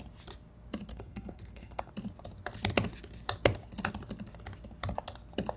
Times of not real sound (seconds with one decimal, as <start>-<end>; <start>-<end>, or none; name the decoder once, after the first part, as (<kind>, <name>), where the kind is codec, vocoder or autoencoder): 0.9-1.9 (codec, SNAC)